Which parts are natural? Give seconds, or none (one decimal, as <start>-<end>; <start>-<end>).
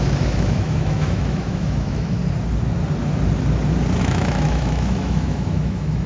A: 2.2-4.0